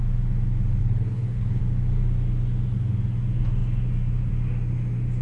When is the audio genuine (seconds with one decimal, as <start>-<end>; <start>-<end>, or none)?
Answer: 0.0-0.8; 1.6-5.2